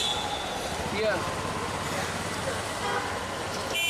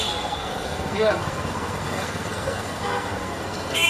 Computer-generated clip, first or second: second